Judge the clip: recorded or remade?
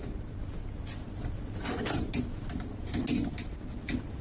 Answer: recorded